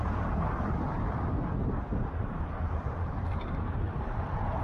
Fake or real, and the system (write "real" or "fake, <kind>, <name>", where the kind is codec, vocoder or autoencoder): fake, vocoder, BigVGAN v2